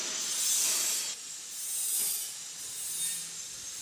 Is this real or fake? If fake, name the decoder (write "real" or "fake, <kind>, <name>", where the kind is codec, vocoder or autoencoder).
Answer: real